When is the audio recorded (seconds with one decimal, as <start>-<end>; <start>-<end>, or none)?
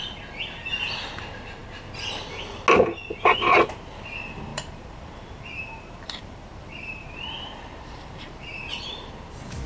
0.0-4.5; 9.1-9.7